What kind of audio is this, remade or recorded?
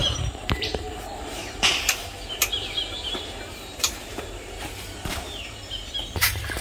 remade